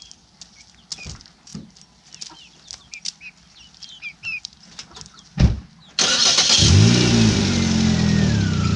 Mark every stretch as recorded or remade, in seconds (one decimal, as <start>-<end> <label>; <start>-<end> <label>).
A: 0.0-8.8 recorded